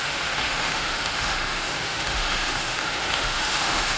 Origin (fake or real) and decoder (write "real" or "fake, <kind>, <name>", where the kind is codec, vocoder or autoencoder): fake, autoencoder, DAC-VAE